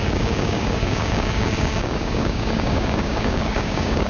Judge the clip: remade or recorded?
remade